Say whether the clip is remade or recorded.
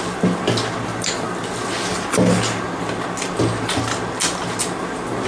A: recorded